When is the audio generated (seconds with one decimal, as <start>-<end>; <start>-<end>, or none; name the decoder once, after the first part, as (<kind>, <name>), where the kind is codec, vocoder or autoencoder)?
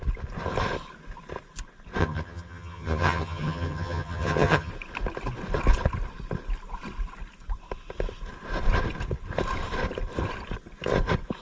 2.0-4.7 (vocoder, HiFi-GAN)